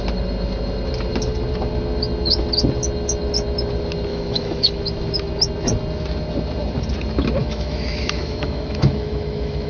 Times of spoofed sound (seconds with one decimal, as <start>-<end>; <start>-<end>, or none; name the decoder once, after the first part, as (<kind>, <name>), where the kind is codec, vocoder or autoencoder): 4.1-4.8 (autoencoder, DAC-VAE); 7.4-9.7